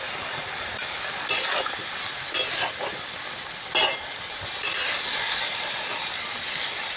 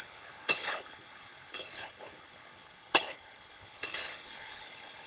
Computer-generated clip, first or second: second